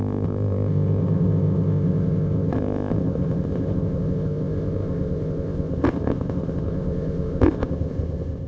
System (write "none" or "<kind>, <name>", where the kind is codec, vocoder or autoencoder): codec, ZipCodec